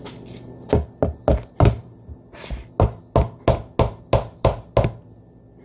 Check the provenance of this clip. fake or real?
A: real